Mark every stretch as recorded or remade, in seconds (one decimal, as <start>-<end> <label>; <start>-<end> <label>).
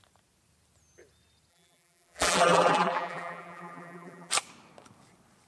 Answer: 0.0-1.5 recorded; 1.5-4.3 remade; 4.3-5.5 recorded